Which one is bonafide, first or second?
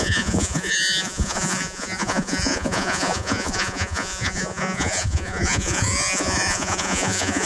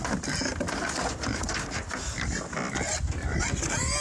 second